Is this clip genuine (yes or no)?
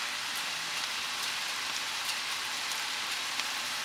no